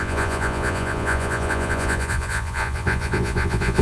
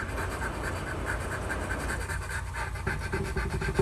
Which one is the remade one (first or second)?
first